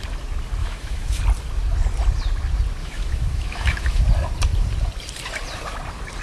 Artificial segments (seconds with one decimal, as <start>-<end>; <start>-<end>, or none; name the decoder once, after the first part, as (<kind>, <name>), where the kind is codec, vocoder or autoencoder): 0.6-1.2 (autoencoder, DAC-VAE); 2.8-4.0